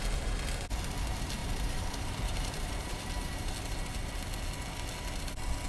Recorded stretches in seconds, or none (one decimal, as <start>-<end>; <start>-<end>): 0.0-1.4; 3.5-5.7